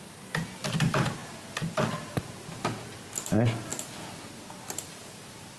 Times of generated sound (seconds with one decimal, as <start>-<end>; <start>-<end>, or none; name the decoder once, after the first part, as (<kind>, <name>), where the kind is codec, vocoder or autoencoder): none